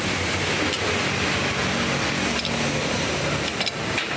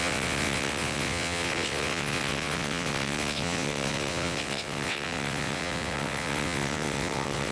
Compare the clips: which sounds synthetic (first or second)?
second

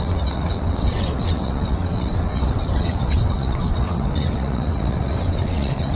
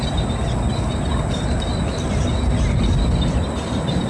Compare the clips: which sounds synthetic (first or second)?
first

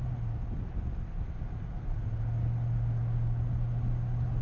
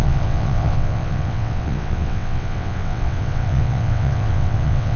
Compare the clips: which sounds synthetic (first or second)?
second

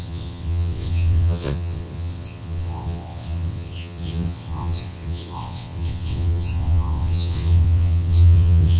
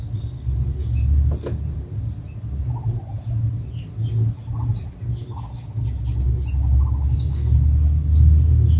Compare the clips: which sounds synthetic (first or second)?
first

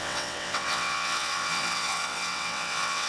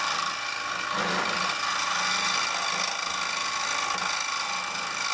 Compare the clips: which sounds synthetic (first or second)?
first